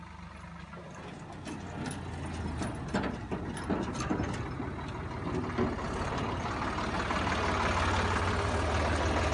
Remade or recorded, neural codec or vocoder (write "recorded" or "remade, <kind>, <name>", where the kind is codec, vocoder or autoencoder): recorded